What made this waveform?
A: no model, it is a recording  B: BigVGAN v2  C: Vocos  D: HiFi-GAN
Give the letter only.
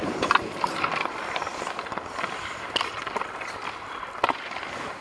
A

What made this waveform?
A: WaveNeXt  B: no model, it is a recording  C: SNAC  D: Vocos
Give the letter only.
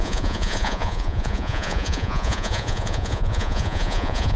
D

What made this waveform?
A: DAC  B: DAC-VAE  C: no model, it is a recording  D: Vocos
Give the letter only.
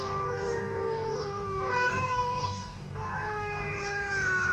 A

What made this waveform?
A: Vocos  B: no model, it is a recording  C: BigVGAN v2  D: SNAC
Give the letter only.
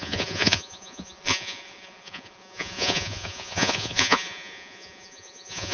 A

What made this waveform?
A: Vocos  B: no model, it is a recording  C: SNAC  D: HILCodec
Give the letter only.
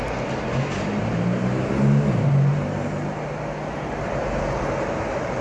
B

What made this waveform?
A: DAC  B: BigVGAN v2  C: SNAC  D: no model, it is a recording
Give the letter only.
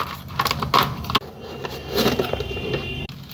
D